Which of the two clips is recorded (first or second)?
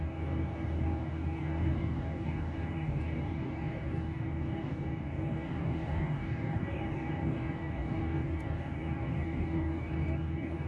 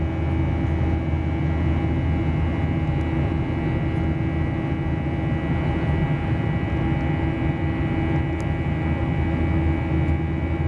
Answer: second